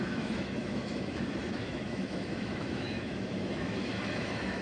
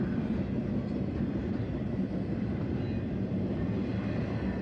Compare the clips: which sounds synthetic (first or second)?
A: first